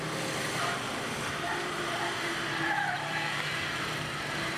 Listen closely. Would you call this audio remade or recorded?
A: remade